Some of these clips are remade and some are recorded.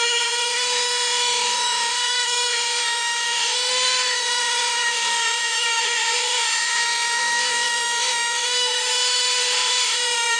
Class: remade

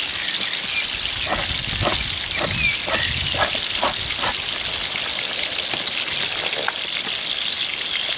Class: recorded